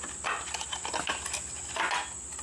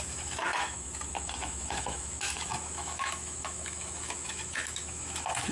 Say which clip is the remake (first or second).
second